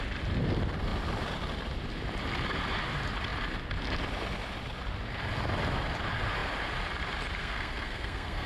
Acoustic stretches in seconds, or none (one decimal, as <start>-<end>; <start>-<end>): 0.0-7.4